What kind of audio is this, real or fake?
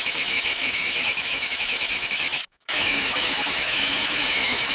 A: fake